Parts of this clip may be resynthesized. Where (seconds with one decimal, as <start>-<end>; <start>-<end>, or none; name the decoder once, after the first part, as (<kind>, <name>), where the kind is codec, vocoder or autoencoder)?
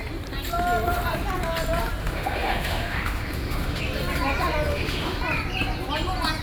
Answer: 2.0-3.8 (autoencoder, DAC-VAE); 4.7-5.2